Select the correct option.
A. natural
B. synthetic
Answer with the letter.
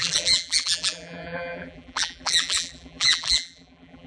B